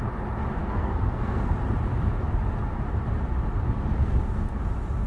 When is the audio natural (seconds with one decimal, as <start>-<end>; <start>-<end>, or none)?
0.0-0.6; 1.5-4.0; 4.6-5.1